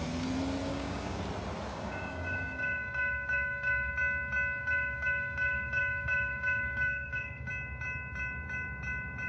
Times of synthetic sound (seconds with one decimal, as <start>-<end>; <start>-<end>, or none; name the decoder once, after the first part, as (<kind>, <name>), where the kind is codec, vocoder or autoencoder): 0.7-1.2 (codec, DAC); 1.7-3.9; 4.6-7.5